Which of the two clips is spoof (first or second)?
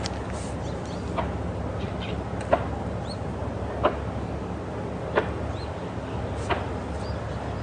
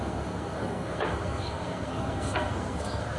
second